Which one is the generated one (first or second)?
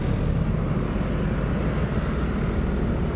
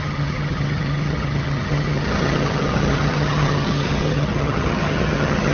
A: second